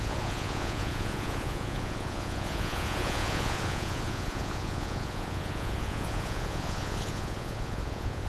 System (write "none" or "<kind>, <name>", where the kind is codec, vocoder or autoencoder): vocoder, Vocos